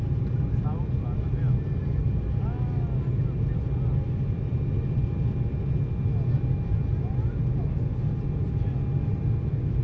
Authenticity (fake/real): real